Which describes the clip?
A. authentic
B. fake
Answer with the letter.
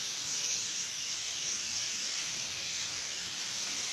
B